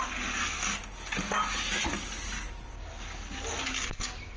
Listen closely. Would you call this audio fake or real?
real